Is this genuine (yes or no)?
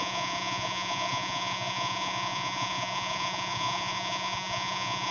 no